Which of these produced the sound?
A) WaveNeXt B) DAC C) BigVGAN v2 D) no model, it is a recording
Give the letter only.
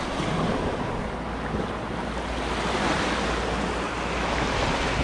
D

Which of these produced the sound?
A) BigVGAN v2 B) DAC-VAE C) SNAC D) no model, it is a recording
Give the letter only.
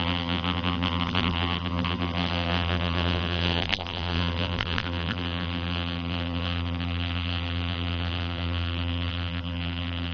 A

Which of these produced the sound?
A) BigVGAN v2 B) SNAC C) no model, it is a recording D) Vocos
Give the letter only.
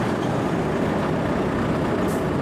A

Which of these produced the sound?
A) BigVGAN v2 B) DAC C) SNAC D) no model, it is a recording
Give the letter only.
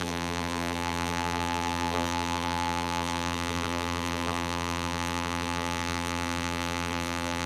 A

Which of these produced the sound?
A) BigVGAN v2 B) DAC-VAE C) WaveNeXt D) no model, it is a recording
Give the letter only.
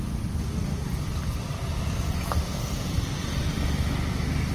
D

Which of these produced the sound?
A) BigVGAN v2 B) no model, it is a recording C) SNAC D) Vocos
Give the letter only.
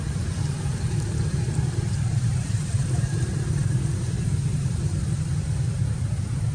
A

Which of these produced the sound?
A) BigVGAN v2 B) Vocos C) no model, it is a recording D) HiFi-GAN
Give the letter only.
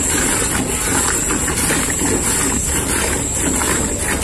C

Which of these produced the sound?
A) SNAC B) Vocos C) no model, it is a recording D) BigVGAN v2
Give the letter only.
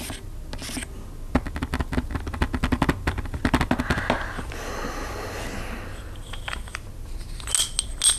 C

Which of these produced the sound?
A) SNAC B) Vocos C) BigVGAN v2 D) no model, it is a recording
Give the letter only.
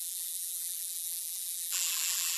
C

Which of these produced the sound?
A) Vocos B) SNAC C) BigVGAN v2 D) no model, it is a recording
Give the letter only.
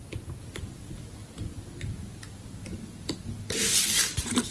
D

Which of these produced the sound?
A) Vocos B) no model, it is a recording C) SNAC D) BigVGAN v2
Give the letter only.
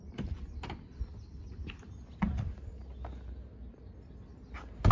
B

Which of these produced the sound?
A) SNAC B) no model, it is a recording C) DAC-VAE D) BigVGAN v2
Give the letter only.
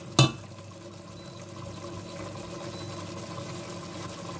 B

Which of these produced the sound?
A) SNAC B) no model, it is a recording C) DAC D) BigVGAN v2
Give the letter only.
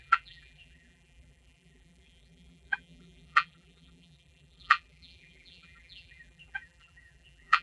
D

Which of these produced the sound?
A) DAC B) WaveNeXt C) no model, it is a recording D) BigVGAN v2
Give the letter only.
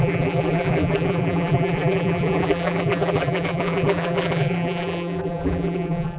D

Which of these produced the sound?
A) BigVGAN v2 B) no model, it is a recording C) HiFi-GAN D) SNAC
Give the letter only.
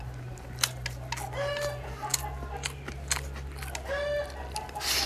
B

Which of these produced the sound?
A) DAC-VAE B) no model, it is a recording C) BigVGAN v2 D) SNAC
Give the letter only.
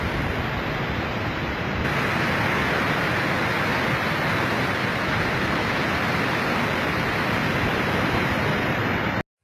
B